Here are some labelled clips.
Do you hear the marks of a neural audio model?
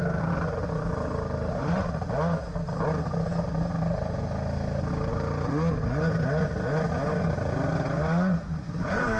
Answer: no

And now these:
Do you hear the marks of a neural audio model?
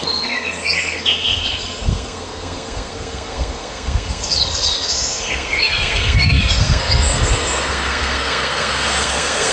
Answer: yes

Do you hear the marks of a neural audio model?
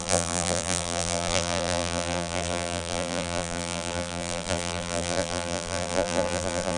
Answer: yes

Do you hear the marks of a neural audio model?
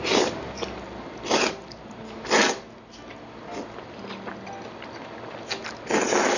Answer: no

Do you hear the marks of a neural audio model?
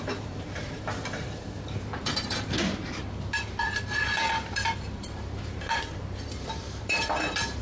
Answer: yes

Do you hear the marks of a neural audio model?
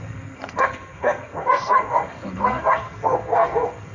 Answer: yes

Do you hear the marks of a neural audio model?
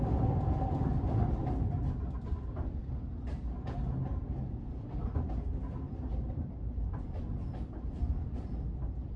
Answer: no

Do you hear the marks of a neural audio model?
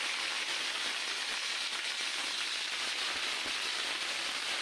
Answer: no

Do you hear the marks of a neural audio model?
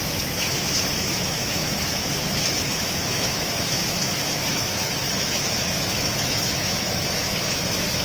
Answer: yes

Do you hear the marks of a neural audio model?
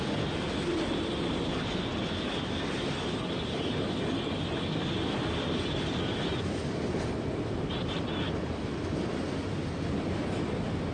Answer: no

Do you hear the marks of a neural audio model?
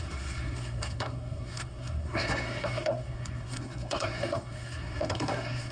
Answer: yes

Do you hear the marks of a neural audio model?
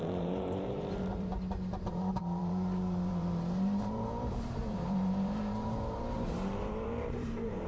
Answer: yes